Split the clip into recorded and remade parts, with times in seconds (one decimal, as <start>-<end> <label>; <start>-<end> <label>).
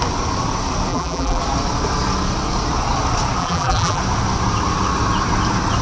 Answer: 0.0-0.9 recorded; 0.9-1.4 remade; 1.4-3.4 recorded; 3.4-4.0 remade; 4.0-5.8 recorded